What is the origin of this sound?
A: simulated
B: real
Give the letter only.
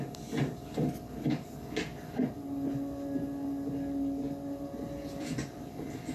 B